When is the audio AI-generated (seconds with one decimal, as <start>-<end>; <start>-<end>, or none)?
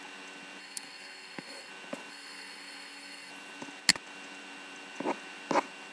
0.6-1.7; 2.1-3.3